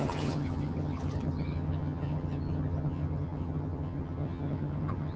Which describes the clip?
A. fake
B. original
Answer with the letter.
A